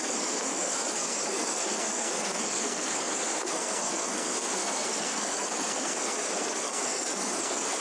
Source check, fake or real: fake